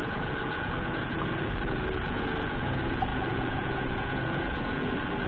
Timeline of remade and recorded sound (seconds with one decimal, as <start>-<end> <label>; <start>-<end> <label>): 0.0-5.3 remade